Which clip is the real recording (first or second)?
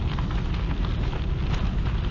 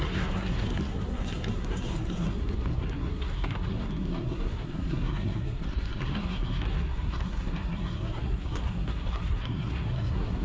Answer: first